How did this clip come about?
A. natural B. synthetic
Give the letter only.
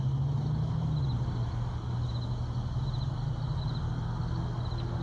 A